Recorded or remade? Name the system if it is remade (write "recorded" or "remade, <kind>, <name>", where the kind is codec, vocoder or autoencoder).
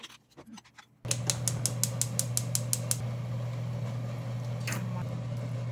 recorded